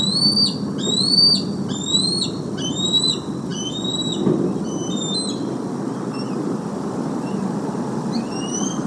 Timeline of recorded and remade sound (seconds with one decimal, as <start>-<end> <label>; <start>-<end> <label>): 0.0-8.9 recorded